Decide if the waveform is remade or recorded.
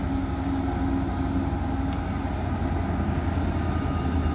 recorded